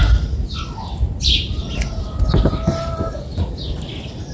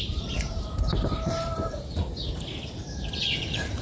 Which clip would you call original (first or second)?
first